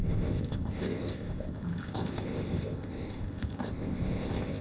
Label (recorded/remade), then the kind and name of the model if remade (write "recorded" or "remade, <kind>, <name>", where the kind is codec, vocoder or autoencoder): remade, codec, ZipCodec